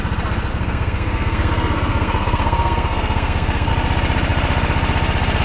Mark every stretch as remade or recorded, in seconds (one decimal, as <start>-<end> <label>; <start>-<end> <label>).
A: 0.0-0.5 recorded; 0.5-3.7 remade; 3.7-5.4 recorded